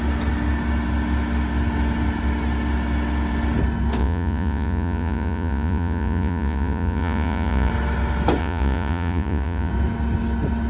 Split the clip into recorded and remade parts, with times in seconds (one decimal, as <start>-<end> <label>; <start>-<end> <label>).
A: 0.0-4.0 recorded; 4.0-7.7 remade; 7.7-8.4 recorded; 8.4-9.7 remade; 9.7-10.7 recorded